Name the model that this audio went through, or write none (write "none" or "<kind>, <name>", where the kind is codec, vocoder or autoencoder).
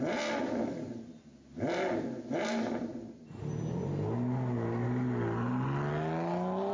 none